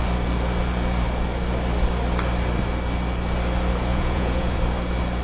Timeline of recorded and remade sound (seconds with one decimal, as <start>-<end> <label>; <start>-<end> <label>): 0.0-3.9 recorded; 3.9-4.6 remade; 4.6-5.2 recorded